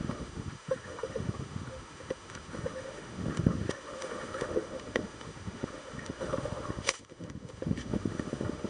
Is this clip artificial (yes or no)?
yes